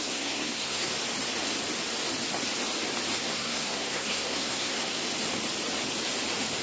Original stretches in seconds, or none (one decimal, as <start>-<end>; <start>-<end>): 0.9-3.2; 5.0-6.6